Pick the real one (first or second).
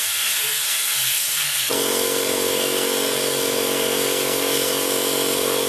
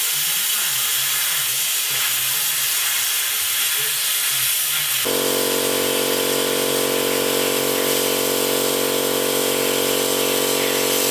second